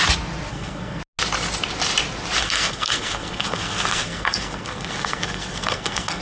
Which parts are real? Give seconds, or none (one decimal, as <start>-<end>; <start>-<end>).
0.0-0.5; 1.0-2.4